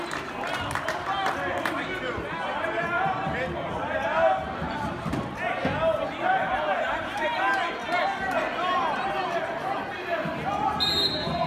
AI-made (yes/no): no